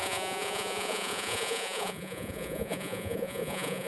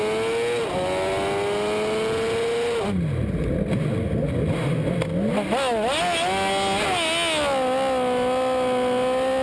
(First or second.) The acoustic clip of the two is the second